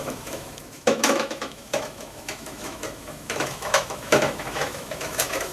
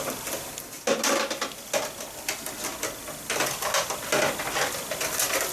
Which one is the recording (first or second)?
second